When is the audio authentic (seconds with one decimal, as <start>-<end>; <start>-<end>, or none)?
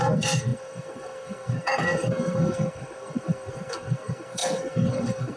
none